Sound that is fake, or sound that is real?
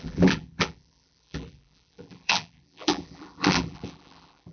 fake